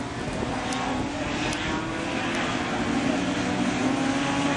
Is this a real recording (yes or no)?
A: yes